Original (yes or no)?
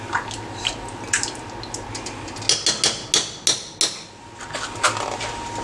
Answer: yes